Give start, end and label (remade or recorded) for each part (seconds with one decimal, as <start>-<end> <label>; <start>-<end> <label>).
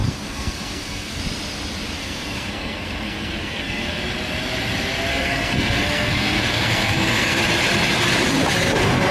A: 0.0-1.2 remade; 1.2-2.0 recorded; 2.0-4.0 remade; 4.0-5.1 recorded; 5.1-7.4 remade; 7.4-9.1 recorded